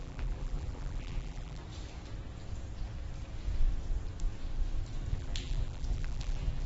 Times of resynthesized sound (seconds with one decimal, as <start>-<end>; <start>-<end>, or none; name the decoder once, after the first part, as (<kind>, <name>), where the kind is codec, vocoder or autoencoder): 0.0-1.6 (vocoder, BigVGAN v2); 5.1-6.7